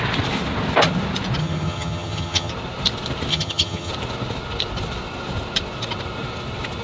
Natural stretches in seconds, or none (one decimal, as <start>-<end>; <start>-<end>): 0.0-1.4; 2.5-3.3; 3.9-6.8